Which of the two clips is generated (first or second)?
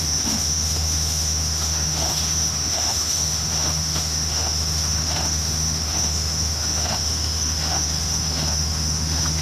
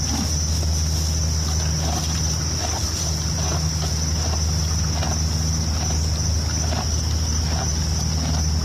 first